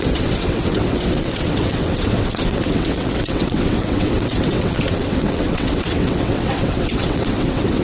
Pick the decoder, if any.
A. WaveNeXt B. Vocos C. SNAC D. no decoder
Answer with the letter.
A